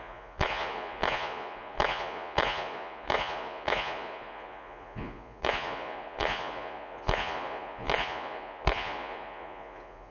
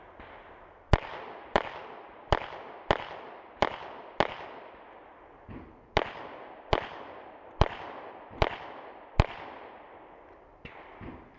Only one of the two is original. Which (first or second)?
second